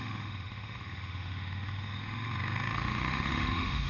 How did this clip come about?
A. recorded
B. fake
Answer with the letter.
B